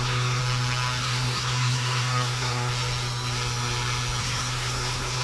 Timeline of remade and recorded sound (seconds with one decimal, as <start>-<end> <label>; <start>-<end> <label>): 0.0-0.4 remade; 0.4-1.0 recorded; 1.0-2.7 remade; 2.7-4.2 recorded; 4.2-5.2 remade

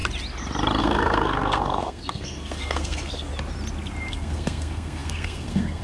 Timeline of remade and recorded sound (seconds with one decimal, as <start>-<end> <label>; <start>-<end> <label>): 0.0-0.8 recorded; 0.8-3.3 remade; 3.3-4.1 recorded; 4.1-5.8 remade

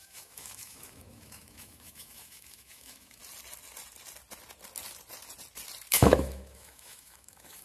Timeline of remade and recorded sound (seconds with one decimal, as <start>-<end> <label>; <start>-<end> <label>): 0.0-3.2 remade; 3.2-5.9 recorded; 5.9-7.6 remade

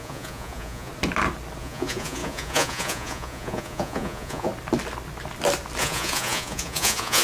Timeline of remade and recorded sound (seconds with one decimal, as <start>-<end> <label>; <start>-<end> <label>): 0.0-0.9 remade; 0.9-1.6 recorded; 1.6-4.5 remade; 4.5-5.8 recorded; 5.8-7.2 remade

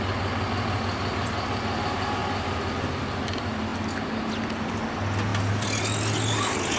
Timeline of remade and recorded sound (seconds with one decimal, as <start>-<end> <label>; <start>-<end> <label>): 0.0-6.8 recorded

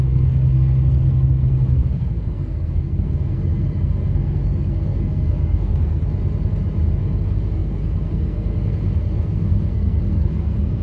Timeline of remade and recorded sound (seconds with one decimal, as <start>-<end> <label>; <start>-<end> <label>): 0.0-6.0 remade; 6.0-7.0 recorded; 7.0-10.8 remade

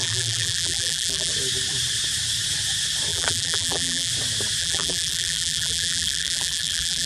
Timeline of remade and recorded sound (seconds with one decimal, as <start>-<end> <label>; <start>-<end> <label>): 0.0-1.3 remade; 1.3-3.1 recorded; 3.1-4.1 remade; 4.1-4.6 recorded; 4.6-7.1 remade

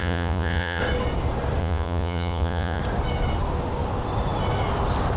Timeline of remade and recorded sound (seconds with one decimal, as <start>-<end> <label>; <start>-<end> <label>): 0.0-0.8 remade; 0.8-1.6 recorded; 1.6-2.8 remade; 2.8-5.2 recorded